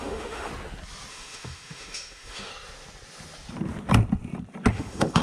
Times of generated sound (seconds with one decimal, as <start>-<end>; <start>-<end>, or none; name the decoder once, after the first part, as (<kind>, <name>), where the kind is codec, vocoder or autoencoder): 0.0-0.5 (autoencoder, DAC-VAE); 1.1-2.5; 4.7-5.2